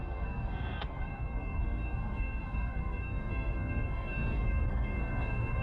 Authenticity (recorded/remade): remade